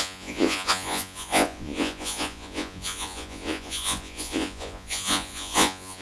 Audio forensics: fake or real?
fake